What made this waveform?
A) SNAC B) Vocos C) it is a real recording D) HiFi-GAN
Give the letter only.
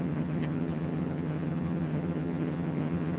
D